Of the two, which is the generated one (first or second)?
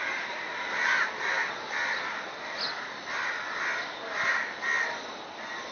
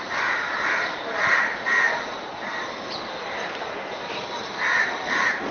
second